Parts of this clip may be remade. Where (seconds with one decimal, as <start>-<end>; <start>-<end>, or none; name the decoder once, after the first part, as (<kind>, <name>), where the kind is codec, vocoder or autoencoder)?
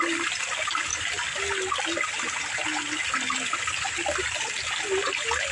none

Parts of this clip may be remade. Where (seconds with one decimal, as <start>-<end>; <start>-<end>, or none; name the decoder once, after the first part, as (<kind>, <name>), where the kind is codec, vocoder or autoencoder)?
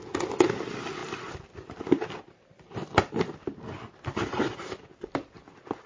1.0-1.5 (vocoder, BigVGAN v2)